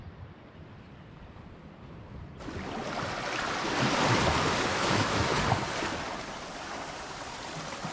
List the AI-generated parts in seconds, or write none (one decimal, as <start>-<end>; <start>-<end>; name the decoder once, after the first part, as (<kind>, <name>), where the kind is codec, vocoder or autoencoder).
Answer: 4.7-5.4 (autoencoder, DAC-VAE)